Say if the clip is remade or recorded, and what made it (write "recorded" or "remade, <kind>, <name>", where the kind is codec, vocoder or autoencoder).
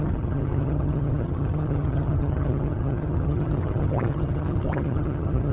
remade, vocoder, HiFi-GAN